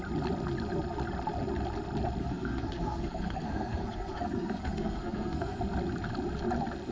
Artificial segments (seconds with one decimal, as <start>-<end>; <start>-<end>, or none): 2.2-5.6